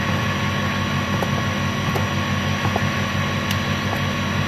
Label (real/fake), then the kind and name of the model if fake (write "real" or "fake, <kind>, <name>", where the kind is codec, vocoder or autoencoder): real